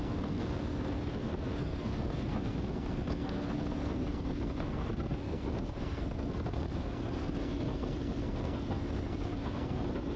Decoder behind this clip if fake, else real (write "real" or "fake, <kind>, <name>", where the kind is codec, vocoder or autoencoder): fake, codec, SNAC